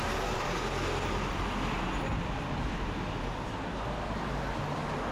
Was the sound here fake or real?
real